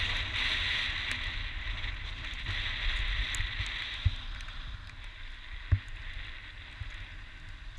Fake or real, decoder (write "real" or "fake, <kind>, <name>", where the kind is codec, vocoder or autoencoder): real